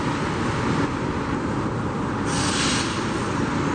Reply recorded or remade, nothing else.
recorded